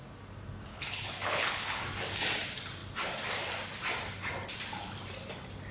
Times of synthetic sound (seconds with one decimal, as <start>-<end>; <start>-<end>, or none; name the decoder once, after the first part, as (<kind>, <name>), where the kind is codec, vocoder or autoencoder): 0.7-1.8 (codec, HILCodec)